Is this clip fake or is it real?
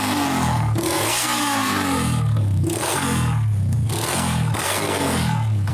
fake